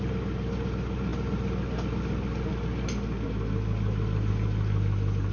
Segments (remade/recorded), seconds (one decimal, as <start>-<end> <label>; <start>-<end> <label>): 0.0-5.3 recorded